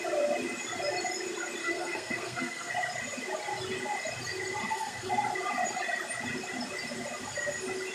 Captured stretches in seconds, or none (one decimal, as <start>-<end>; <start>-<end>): 0.0-1.6; 2.7-4.6; 5.1-7.9